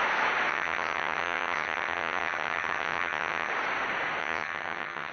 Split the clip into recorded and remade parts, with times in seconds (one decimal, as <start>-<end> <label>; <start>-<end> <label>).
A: 0.0-0.5 recorded; 0.5-3.5 remade; 3.5-4.2 recorded; 4.2-5.1 remade